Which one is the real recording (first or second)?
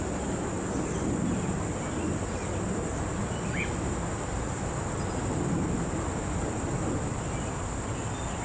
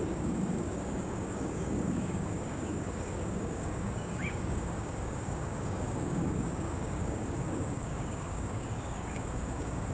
first